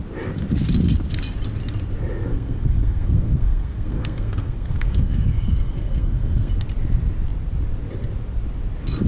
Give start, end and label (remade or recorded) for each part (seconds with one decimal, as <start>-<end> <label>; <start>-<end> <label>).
0.0-2.3 recorded; 2.3-6.5 remade; 6.5-9.1 recorded